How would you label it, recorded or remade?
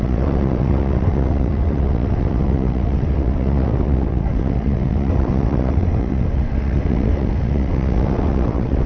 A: remade